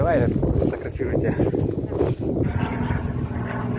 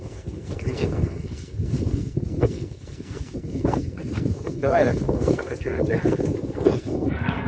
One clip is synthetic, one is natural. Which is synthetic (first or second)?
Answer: second